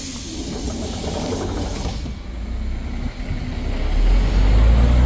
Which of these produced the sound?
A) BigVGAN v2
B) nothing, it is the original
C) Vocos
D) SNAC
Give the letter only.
B